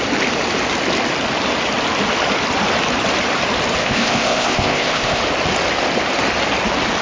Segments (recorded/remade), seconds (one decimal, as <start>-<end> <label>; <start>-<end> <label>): 0.0-3.8 recorded; 3.8-5.2 remade; 5.2-7.0 recorded

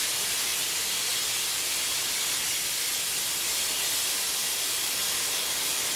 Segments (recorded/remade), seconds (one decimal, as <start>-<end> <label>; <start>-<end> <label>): 0.0-6.0 recorded